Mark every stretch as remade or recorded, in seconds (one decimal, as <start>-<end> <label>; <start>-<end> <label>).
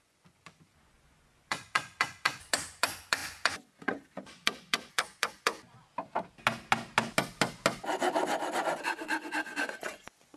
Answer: 0.0-5.5 remade; 5.5-8.6 recorded; 8.6-10.4 remade